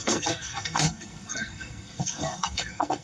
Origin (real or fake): fake